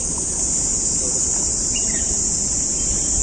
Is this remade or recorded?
recorded